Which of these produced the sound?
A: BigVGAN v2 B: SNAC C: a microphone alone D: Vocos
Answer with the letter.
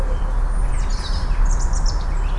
C